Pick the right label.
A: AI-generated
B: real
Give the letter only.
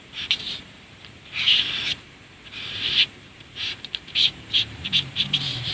A